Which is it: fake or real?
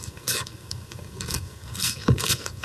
fake